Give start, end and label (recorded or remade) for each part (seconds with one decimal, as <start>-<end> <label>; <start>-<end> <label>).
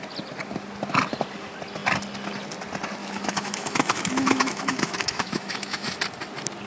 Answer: 0.0-3.0 recorded; 3.0-6.0 remade; 6.0-6.7 recorded